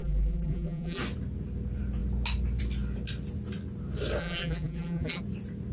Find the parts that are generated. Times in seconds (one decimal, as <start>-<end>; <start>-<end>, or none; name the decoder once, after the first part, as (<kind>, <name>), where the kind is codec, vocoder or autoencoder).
0.0-1.0 (vocoder, BigVGAN v2); 4.2-5.2

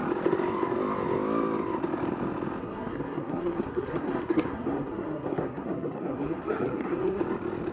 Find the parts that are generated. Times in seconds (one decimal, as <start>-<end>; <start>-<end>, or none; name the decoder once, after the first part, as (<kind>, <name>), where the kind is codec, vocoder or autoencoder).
2.6-7.2 (codec, SNAC)

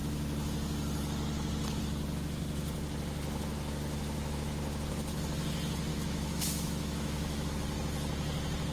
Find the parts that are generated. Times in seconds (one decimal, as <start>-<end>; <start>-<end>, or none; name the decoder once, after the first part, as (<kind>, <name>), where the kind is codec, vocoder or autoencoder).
5.9-7.5 (autoencoder, DAC-VAE)

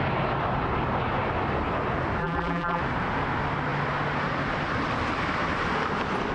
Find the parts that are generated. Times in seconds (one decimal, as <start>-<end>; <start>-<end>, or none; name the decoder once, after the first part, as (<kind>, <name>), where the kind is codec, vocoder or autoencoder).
2.2-2.8 (vocoder, BigVGAN v2)

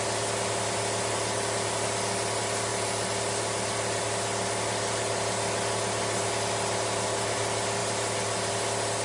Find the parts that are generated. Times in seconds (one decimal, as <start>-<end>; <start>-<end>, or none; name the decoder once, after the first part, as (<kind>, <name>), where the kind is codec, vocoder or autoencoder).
none

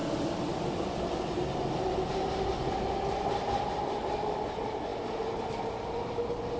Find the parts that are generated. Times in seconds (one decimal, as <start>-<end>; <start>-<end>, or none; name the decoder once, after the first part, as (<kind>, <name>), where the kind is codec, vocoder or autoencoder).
none

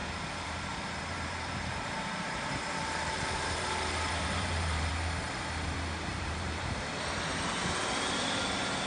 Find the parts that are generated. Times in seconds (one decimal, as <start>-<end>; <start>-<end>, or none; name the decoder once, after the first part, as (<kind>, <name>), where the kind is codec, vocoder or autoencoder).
0.0-4.9 (vocoder, BigVGAN v2); 6.1-6.9

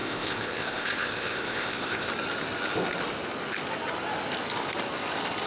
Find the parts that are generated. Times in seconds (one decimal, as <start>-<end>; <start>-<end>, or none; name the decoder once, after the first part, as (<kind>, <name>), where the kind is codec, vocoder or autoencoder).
0.0-2.1 (codec, ZipCodec)